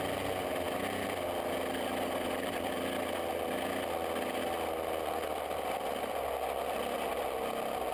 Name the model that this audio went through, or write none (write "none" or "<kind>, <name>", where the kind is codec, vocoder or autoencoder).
none